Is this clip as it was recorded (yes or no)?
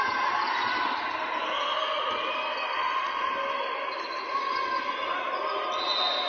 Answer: yes